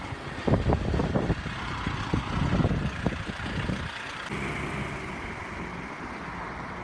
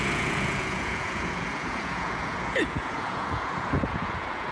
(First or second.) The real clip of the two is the first